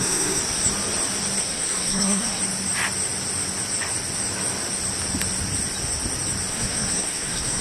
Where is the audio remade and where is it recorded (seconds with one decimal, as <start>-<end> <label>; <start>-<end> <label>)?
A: 0.0-0.4 remade; 0.4-1.4 recorded; 1.4-2.4 remade; 2.4-6.5 recorded; 6.5-7.6 remade